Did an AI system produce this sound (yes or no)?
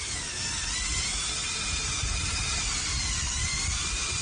no